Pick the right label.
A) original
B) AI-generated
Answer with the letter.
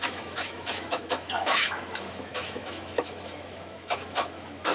B